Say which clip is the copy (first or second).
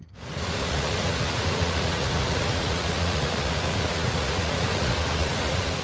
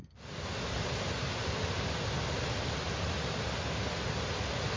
first